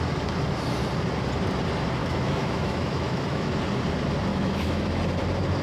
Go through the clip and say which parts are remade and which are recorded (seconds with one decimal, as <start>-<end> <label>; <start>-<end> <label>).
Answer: 0.0-2.0 recorded; 2.0-3.5 remade; 3.5-4.3 recorded; 4.3-5.0 remade; 5.0-5.6 recorded